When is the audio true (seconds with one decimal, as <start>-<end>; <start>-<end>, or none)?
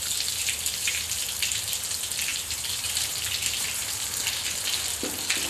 0.0-0.4; 1.2-2.3; 4.4-5.5